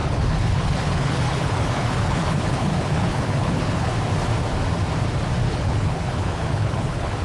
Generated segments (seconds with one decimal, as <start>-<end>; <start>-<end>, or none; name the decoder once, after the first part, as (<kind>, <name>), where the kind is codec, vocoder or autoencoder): 0.0-3.9 (codec, HILCodec); 5.5-7.2